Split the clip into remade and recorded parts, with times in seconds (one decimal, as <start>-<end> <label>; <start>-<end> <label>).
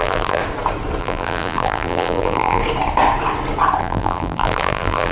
0.0-0.4 remade; 0.4-1.0 recorded; 1.0-2.6 remade; 2.6-3.8 recorded; 3.8-5.1 remade